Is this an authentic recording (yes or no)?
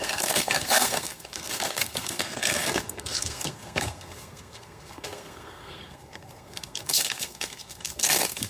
no